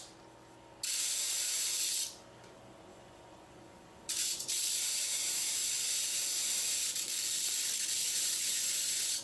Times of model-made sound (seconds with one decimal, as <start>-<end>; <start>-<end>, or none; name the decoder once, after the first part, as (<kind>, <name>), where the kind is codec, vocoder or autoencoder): 2.9-4.5 (vocoder, Vocos); 6.4-7.1; 8.1-9.2